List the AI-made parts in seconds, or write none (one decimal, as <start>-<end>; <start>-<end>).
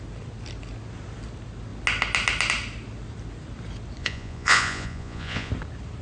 4.0-5.5